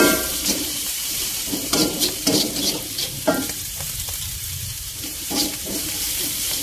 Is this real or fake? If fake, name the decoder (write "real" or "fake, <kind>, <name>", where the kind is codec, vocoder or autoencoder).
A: fake, vocoder, BigVGAN v2